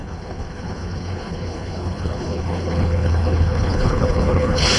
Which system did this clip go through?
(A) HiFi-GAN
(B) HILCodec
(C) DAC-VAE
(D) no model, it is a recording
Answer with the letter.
B